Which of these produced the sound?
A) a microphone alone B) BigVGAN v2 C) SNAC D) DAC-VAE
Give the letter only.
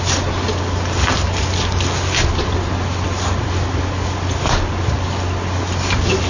A